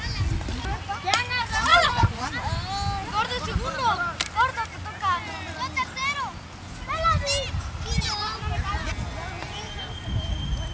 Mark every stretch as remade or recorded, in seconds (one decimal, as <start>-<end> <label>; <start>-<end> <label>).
0.0-1.7 recorded; 1.7-2.3 remade; 2.3-10.7 recorded